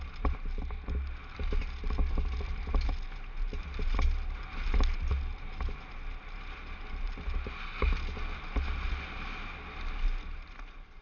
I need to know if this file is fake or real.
real